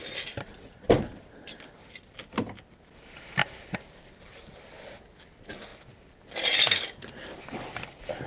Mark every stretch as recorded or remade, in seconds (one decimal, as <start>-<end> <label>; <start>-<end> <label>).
0.0-8.3 recorded